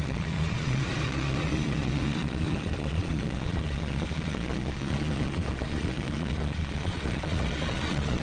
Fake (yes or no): yes